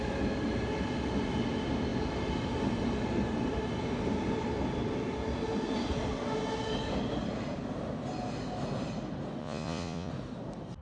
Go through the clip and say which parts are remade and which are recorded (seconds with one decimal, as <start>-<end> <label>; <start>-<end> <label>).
0.0-9.4 recorded; 9.4-10.1 remade; 10.1-10.8 recorded